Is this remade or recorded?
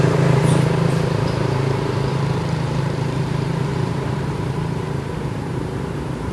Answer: remade